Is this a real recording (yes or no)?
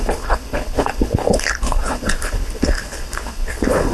no